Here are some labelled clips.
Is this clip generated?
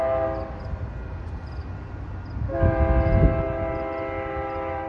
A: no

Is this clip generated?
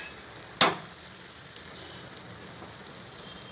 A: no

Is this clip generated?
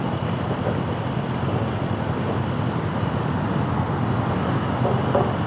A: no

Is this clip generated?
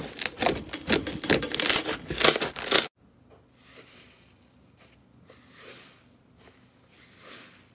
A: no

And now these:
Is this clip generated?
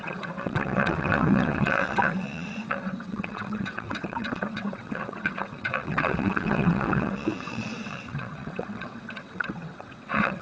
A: yes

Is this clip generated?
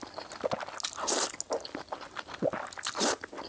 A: no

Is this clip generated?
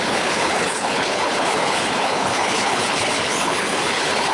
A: yes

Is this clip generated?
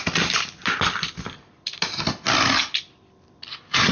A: yes